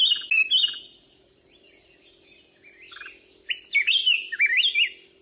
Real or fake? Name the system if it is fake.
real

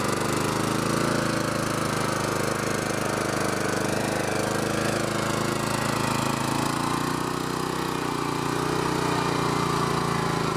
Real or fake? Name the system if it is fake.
real